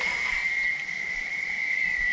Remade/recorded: remade